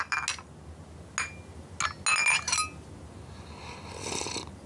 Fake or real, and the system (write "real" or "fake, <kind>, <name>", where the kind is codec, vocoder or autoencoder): real